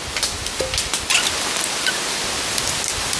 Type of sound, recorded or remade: recorded